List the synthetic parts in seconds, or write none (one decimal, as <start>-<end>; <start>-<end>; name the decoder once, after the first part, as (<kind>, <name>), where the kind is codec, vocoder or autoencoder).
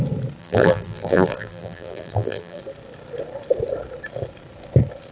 0.4-2.6 (vocoder, BigVGAN v2)